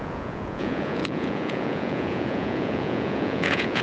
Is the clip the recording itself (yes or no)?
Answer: no